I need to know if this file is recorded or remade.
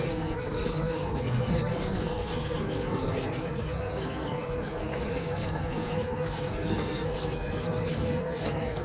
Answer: remade